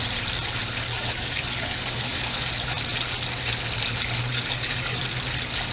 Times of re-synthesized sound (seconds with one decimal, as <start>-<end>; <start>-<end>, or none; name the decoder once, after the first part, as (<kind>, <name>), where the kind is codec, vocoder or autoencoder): 0.9-2.5 (codec, DAC); 4.3-5.0